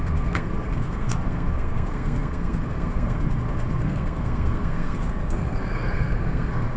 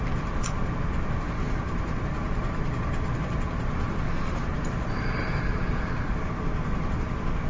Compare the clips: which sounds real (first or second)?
second